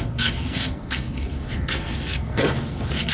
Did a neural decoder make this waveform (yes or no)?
yes